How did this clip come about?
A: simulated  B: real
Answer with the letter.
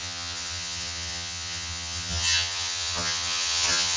A